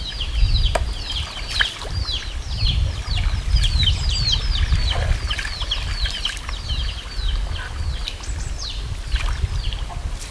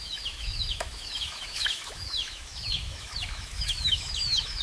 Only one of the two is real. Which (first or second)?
first